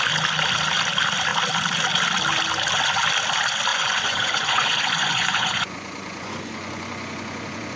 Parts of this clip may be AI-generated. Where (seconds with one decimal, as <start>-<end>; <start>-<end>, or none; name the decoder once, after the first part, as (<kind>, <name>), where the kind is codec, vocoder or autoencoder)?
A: 3.7-7.8 (vocoder, Vocos)